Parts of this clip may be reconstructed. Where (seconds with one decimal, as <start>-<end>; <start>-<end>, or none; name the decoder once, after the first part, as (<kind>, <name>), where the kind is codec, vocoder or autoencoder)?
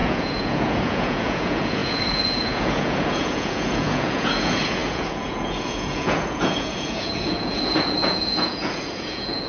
0.0-9.5 (vocoder, Vocos)